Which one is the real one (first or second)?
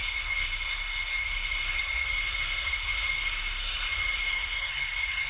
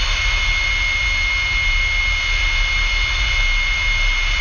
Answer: second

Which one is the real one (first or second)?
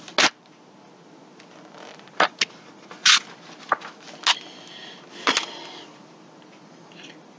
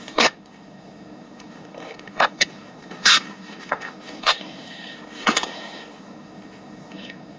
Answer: first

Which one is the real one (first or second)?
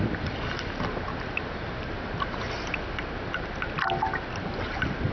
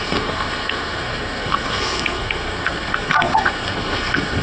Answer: first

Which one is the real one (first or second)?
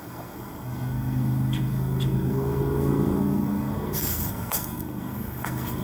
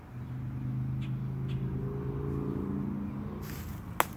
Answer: second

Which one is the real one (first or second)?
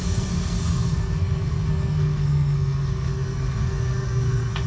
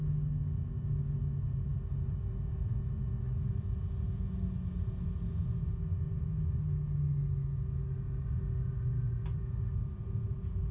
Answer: second